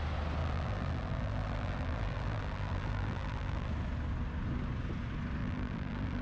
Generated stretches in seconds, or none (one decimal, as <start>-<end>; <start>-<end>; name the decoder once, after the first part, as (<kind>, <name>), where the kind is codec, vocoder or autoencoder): 0.4-3.7 (vocoder, BigVGAN v2); 5.4-6.2